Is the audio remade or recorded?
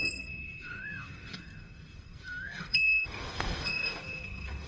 remade